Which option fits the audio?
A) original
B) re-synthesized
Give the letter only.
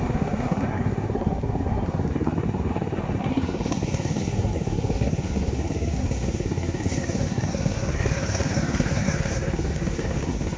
B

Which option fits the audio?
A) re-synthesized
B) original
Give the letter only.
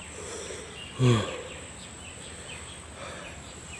B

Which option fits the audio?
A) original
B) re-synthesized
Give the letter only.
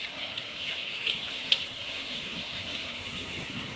B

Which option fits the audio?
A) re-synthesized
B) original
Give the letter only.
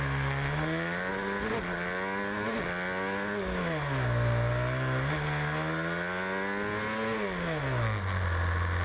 B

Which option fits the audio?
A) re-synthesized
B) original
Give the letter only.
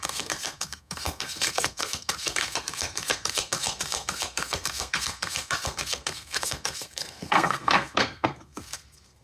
A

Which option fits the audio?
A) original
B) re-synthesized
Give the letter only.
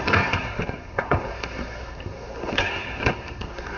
B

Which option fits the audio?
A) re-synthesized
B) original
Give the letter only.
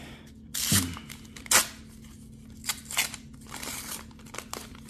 B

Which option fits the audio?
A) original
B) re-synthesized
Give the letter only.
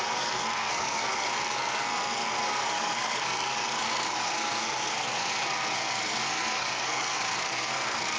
B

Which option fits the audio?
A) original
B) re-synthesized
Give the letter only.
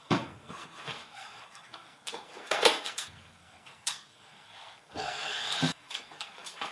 B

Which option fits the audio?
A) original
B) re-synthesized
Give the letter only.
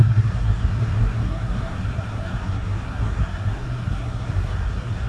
B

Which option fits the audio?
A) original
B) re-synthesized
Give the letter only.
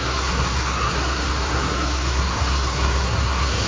B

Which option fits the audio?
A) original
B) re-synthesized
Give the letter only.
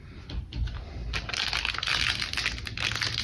A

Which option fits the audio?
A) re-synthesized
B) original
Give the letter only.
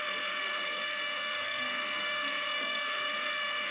A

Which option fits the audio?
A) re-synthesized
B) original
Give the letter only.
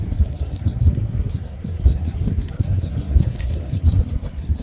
A